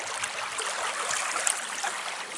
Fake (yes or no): no